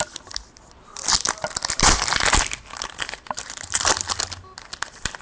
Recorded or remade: recorded